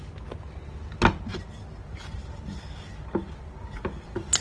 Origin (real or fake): real